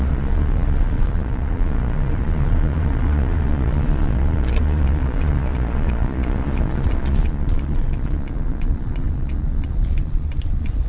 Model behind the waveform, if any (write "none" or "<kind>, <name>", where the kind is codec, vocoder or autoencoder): vocoder, Vocos